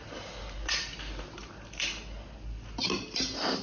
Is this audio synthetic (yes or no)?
no